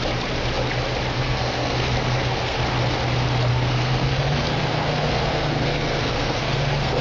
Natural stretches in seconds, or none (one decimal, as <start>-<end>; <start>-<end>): 0.0-1.1; 2.6-3.5